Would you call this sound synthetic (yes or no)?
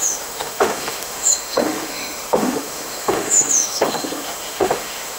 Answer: yes